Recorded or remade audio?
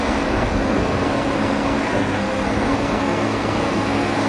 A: remade